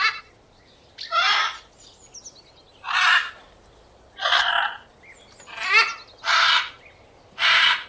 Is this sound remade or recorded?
recorded